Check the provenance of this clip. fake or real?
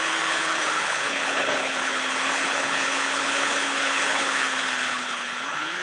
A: fake